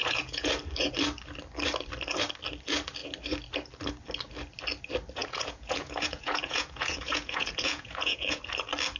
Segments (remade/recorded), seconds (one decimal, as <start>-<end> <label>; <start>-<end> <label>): 0.0-0.5 remade; 0.5-5.2 recorded; 5.2-8.4 remade; 8.4-9.0 recorded